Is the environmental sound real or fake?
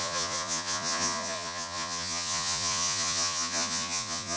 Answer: fake